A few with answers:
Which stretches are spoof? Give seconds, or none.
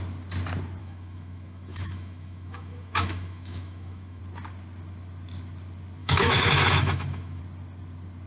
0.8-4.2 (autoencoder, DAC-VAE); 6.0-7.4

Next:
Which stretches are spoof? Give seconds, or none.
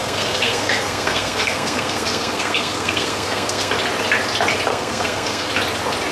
0.0-3.7 (codec, SNAC); 4.7-5.5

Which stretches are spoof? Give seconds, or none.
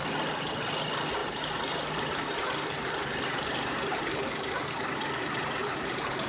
1.2-5.0 (vocoder, BigVGAN v2); 5.6-6.3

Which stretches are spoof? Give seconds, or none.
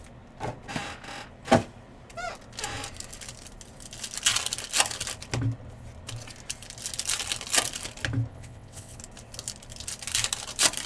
8.3-9.0 (vocoder, WaveNeXt)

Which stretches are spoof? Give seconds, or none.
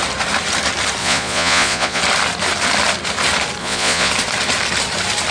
1.0-2.0 (vocoder, Vocos); 3.6-4.1